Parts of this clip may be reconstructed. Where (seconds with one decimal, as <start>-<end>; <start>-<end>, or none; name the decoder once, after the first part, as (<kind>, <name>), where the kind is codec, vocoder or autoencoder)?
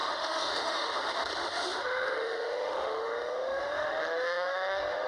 0.0-5.1 (autoencoder, DAC-VAE)